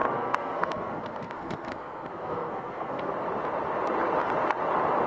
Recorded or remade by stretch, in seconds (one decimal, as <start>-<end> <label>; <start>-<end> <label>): 0.0-3.1 remade; 3.1-5.1 recorded